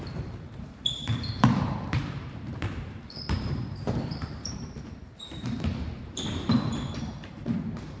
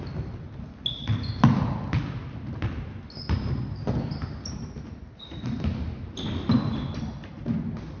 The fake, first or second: first